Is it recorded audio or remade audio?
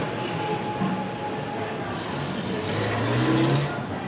recorded